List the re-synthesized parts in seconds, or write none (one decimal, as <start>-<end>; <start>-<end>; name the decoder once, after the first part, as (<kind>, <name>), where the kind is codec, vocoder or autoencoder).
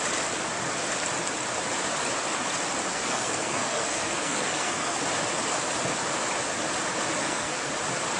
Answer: 2.9-5.0 (codec, SNAC); 7.2-7.7